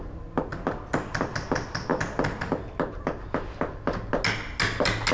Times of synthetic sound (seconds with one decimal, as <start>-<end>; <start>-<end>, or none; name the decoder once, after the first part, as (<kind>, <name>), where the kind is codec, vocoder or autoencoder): none